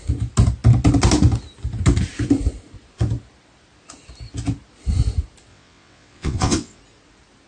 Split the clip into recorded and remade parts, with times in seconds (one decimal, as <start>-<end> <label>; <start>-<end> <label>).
0.0-5.5 recorded; 5.5-6.8 remade; 6.8-7.5 recorded

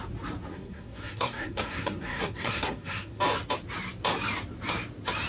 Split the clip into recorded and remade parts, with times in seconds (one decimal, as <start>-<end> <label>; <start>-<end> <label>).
0.0-0.5 recorded; 0.5-3.2 remade; 3.2-5.3 recorded